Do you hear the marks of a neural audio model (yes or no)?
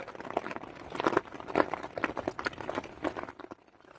no